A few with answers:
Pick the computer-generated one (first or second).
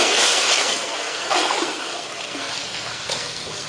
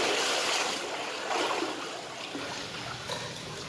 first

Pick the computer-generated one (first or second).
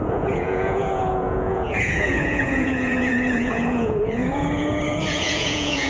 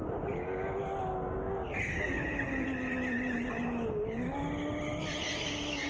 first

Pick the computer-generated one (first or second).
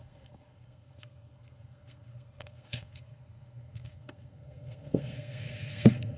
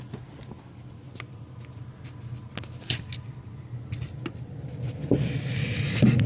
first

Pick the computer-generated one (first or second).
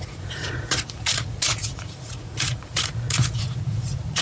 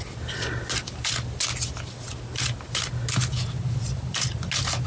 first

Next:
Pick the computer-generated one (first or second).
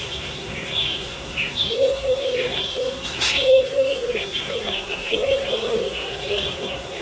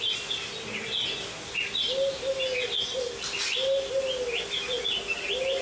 first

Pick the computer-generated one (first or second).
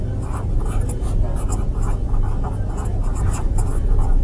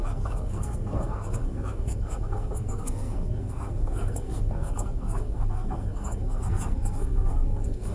second